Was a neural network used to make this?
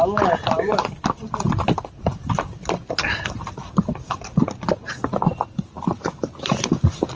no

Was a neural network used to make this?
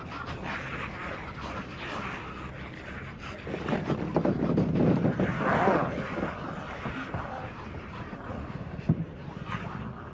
no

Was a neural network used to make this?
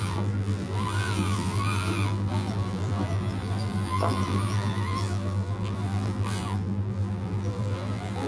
yes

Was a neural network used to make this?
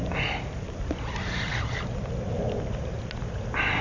no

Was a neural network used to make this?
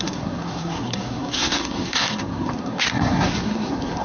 yes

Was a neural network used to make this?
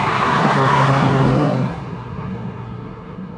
yes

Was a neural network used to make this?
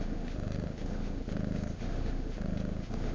yes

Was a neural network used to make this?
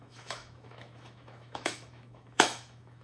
yes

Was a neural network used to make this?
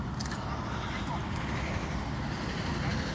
no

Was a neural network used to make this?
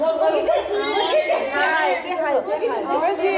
no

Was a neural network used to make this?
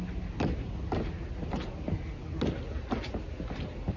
no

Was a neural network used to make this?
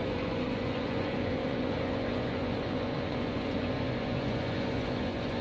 yes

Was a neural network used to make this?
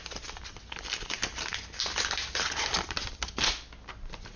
no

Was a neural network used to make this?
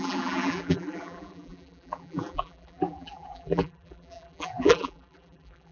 yes